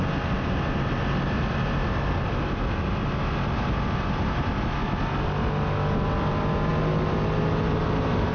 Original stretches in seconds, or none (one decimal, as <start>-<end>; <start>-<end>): 0.0-8.3